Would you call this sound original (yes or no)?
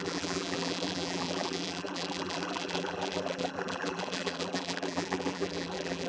no